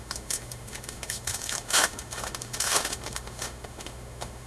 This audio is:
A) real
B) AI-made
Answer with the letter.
B